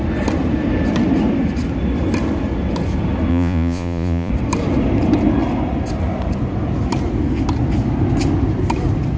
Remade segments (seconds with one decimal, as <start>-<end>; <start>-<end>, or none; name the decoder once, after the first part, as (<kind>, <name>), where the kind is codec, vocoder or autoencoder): 3.3-4.3 (vocoder, Vocos)